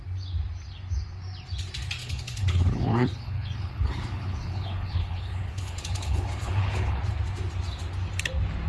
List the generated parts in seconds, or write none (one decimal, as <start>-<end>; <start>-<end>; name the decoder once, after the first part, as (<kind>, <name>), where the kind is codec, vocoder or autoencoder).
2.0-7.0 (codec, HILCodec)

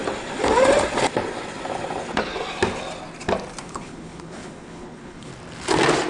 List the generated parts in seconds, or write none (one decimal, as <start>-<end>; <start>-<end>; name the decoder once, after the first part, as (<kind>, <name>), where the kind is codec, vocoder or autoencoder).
3.6-5.3 (codec, HILCodec)

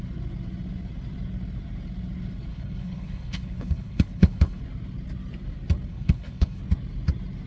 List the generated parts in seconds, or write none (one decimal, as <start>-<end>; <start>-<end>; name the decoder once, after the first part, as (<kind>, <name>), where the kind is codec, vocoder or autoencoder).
2.5-4.6 (codec, HILCodec); 5.9-6.6

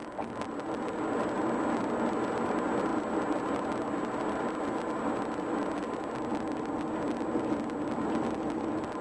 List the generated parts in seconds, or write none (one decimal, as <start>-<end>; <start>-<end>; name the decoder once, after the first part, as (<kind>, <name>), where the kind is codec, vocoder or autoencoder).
none

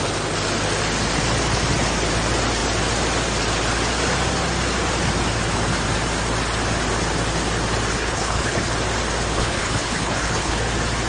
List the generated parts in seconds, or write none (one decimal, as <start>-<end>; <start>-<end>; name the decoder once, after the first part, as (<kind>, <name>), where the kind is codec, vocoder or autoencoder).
7.9-8.7 (codec, HILCodec); 9.3-10.6

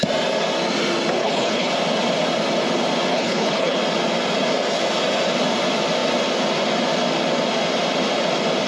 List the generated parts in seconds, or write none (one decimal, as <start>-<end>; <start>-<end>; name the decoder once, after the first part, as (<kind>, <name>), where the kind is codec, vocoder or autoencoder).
1.2-1.7 (codec, HILCodec); 3.1-3.8

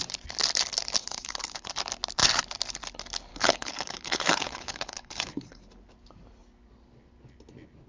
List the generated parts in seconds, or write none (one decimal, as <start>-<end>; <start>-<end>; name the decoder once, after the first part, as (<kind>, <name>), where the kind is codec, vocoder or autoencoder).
1.0-1.7 (codec, HILCodec); 3.3-5.6

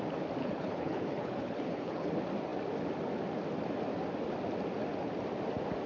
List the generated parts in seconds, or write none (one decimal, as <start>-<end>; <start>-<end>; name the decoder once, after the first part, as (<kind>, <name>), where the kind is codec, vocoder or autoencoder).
0.4-2.1 (codec, HILCodec)